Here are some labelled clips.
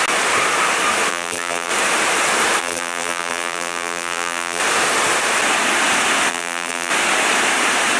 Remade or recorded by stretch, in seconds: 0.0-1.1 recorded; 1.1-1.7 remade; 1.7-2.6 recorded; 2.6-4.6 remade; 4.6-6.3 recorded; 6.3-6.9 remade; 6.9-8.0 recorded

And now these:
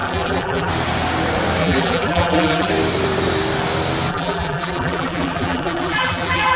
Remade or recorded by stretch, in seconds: 0.0-0.7 remade; 0.7-1.6 recorded; 1.6-2.7 remade; 2.7-4.1 recorded; 4.1-6.6 remade